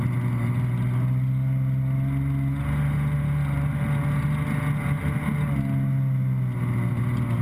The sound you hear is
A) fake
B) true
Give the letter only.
B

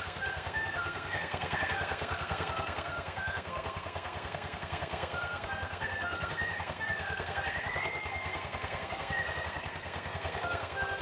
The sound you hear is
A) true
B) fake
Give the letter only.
B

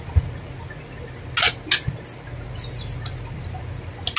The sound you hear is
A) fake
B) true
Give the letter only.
B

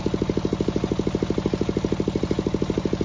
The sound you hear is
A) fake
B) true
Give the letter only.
B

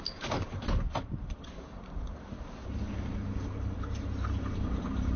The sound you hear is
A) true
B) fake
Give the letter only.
B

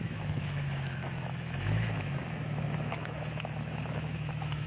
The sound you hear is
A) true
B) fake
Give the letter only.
B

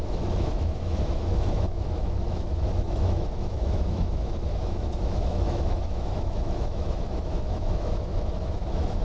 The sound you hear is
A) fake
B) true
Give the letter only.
A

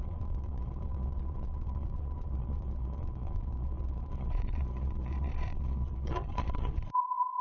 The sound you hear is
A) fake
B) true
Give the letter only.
A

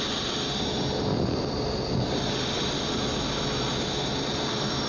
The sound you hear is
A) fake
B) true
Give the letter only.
B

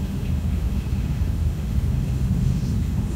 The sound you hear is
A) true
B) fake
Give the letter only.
B